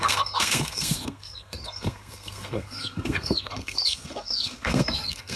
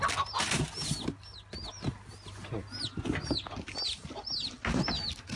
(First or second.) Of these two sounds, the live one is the second